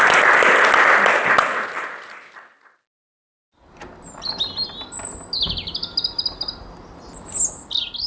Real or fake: real